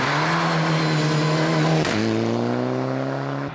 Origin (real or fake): real